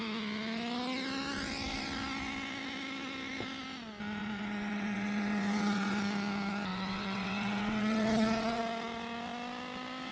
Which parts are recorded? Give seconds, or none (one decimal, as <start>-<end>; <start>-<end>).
0.0-4.2; 6.0-6.7; 8.6-10.1